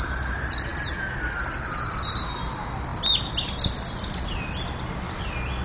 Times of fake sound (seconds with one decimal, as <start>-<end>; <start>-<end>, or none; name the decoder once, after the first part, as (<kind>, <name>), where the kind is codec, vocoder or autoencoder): none